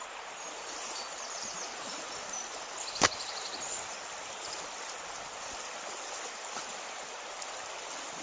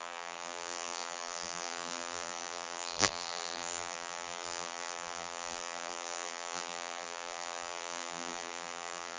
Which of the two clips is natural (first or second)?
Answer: first